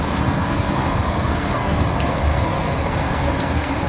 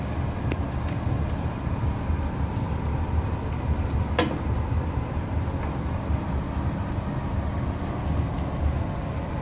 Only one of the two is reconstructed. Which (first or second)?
first